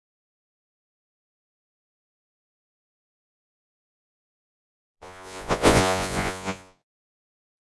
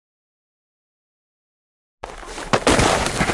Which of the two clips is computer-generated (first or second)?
first